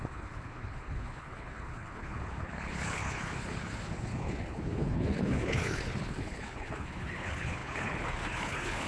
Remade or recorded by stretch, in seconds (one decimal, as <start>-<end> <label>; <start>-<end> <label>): 0.0-8.9 remade